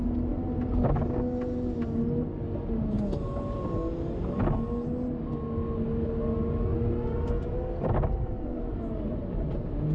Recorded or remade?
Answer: recorded